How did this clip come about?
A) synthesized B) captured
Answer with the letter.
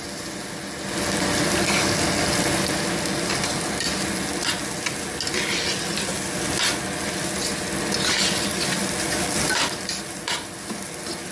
B